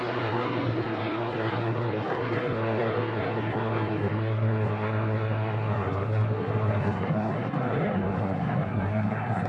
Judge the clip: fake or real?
fake